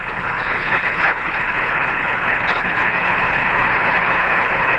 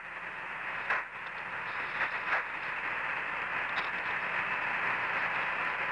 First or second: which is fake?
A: first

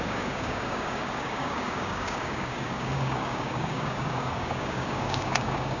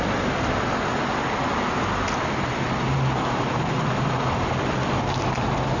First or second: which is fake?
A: first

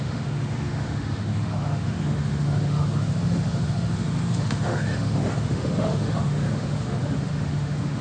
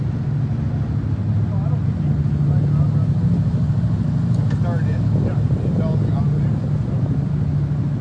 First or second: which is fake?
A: first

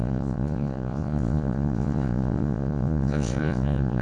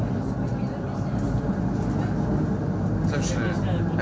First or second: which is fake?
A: first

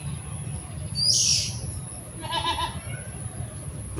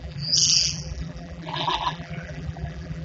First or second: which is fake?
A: second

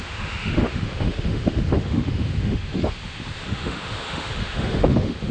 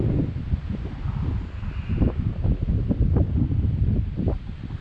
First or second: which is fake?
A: first